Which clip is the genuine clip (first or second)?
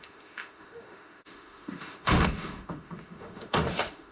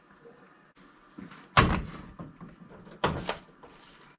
second